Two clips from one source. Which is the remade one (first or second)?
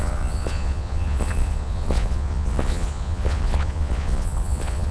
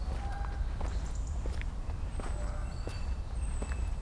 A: first